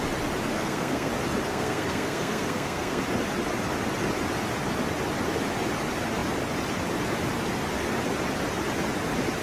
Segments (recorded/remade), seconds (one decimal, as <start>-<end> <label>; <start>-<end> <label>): 0.0-0.5 recorded; 0.5-1.1 remade; 1.1-1.5 recorded; 1.5-3.0 remade; 3.0-9.4 recorded